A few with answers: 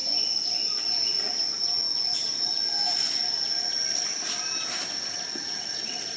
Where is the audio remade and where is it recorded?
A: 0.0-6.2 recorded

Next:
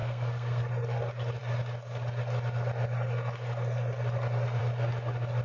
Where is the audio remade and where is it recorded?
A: 0.0-0.7 remade; 0.7-5.4 recorded

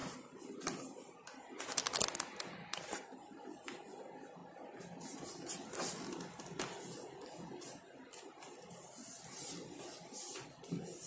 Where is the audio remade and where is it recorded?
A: 0.0-11.1 recorded

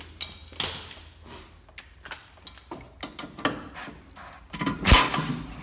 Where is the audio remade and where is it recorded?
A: 0.0-5.6 recorded

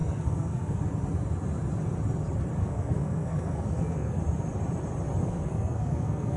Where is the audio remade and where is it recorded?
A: 0.0-0.8 remade; 0.8-2.6 recorded; 2.6-4.2 remade; 4.2-5.2 recorded; 5.2-6.4 remade

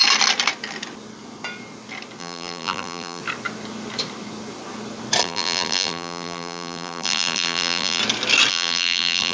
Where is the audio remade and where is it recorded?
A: 0.0-2.2 recorded; 2.2-3.2 remade; 3.2-5.2 recorded; 5.2-8.0 remade; 8.0-8.5 recorded; 8.5-9.3 remade

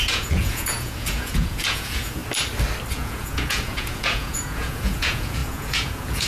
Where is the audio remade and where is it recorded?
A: 0.0-2.2 remade; 2.2-2.9 recorded; 2.9-6.3 remade

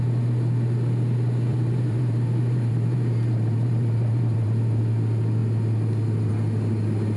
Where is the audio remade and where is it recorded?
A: 0.0-1.5 recorded; 1.5-4.8 remade; 4.8-7.2 recorded